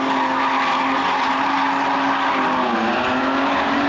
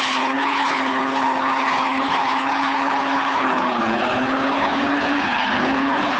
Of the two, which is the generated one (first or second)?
second